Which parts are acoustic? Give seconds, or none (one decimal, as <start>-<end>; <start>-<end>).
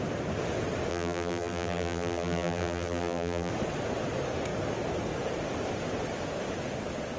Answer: 0.0-0.9; 3.5-7.2